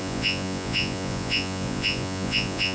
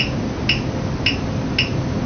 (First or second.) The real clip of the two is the second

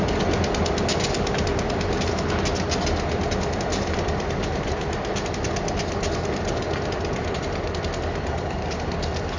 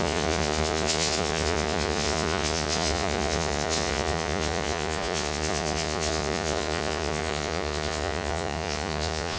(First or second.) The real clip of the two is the first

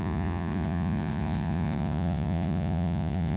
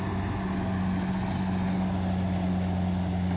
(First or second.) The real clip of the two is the second